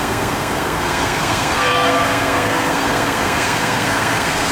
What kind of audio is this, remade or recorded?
remade